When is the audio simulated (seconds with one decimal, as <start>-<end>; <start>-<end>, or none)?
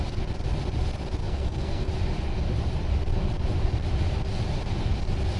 1.2-1.9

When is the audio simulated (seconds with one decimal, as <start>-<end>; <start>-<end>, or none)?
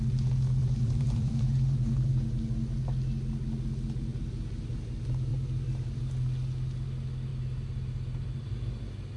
0.6-2.1; 5.3-6.0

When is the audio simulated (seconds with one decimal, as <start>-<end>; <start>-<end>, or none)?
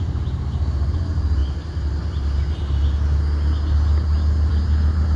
none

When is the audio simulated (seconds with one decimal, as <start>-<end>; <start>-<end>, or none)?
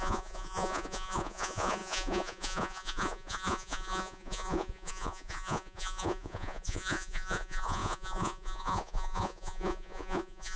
0.0-10.6